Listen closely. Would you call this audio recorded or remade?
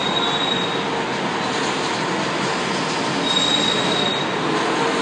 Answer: recorded